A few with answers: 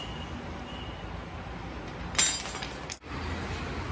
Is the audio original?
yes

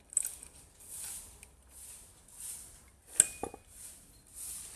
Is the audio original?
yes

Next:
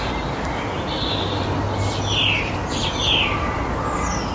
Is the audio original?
yes